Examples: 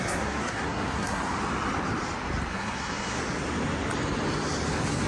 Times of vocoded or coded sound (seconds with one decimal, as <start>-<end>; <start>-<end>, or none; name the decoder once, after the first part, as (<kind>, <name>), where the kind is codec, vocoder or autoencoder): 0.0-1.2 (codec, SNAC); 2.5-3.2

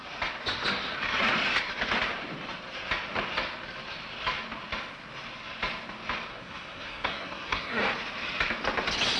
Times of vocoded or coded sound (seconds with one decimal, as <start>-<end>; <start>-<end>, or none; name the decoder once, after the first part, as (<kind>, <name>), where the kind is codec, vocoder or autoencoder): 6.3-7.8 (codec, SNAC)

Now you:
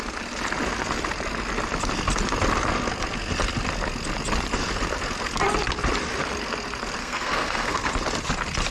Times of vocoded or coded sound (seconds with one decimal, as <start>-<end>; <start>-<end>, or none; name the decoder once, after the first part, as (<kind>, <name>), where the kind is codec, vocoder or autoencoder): 7.0-7.9 (codec, SNAC)

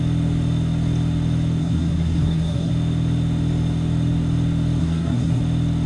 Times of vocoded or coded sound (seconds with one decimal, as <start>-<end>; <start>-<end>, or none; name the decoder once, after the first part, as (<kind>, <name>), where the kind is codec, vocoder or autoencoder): 1.6-2.7 (codec, SNAC); 4.8-5.4

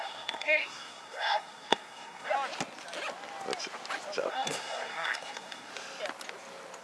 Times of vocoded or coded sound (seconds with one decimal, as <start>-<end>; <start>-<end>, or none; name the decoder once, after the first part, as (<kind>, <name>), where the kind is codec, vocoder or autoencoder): 0.0-2.3 (codec, SNAC); 4.3-5.7

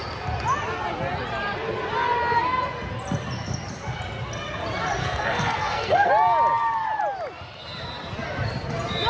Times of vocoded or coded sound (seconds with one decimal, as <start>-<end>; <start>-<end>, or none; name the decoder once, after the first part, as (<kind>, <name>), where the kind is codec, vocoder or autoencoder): 5.0-6.1 (codec, SNAC)

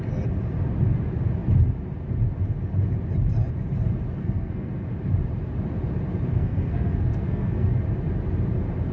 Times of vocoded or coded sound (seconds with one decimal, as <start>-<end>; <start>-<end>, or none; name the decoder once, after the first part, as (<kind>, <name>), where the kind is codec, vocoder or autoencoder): 4.2-4.7 (codec, SNAC); 6.3-7.7

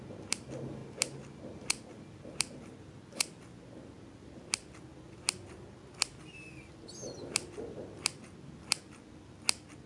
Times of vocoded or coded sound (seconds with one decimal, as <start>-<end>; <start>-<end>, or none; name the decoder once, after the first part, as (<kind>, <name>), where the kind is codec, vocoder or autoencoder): none